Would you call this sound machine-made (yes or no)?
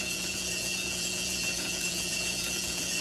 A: yes